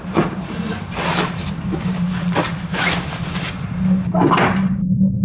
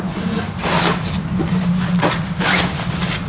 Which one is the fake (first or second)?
first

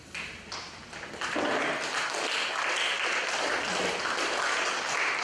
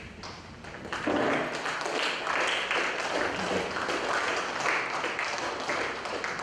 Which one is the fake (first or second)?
first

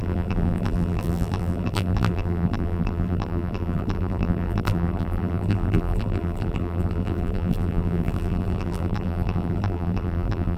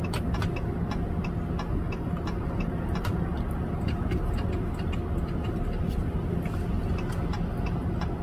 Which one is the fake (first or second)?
first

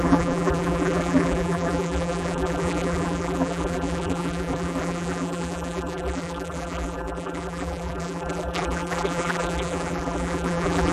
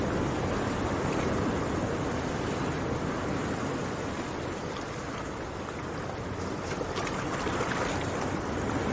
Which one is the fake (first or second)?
first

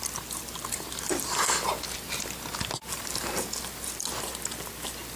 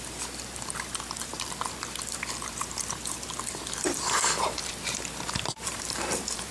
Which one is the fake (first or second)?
second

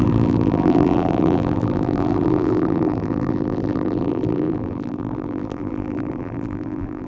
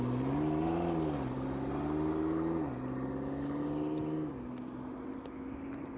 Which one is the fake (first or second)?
first